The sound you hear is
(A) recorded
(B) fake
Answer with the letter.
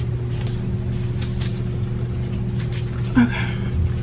A